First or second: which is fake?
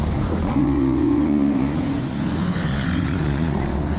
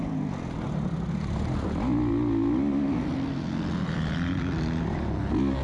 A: first